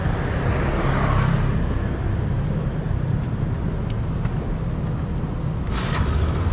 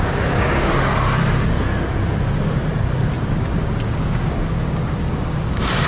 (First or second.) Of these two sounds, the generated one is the second